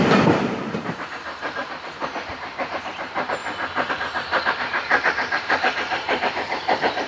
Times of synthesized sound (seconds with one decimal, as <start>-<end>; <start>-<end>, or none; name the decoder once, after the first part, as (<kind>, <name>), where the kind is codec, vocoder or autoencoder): 0.0-7.1 (vocoder, BigVGAN v2)